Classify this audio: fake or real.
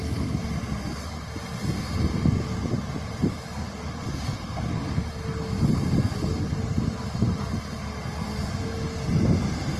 real